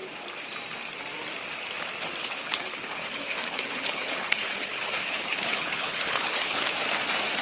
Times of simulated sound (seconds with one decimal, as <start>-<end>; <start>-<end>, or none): 2.2-6.6